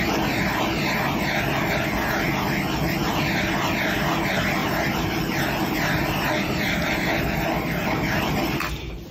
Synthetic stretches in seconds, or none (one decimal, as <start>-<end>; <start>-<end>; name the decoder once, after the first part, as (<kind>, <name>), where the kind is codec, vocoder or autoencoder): 4.6-5.6 (vocoder, BigVGAN v2); 7.8-8.4